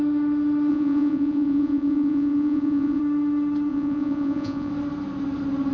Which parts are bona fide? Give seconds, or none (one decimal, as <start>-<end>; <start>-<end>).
0.0-0.7; 3.0-3.7; 4.7-5.7